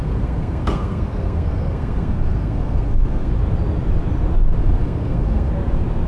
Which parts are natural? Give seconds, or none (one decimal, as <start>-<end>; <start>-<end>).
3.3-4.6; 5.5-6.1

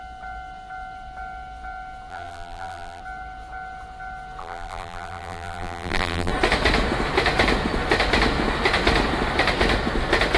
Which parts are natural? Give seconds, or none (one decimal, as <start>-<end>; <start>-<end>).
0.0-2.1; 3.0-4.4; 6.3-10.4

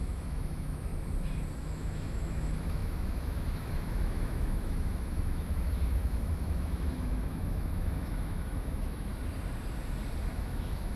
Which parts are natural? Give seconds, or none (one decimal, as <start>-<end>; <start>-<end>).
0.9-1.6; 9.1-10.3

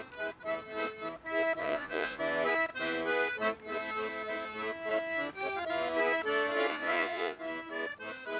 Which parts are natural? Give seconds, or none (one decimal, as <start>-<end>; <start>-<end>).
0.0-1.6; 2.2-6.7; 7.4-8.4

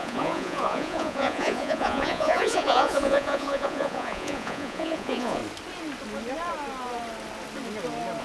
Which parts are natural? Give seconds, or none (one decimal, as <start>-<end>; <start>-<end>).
5.4-8.2

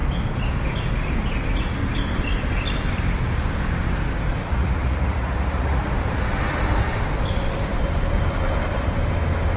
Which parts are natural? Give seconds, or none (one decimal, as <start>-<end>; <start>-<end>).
0.0-4.4; 5.9-9.6

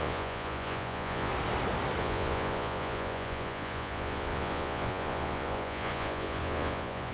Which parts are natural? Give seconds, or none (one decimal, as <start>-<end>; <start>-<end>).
1.3-2.0

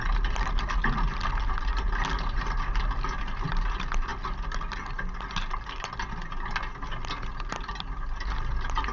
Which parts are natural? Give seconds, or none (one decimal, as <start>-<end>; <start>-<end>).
0.0-8.9